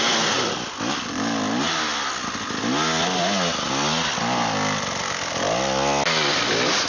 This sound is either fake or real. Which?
real